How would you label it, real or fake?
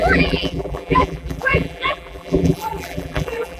fake